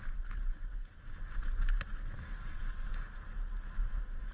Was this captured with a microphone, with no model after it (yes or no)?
yes